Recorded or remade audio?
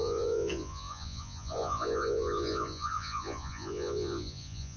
remade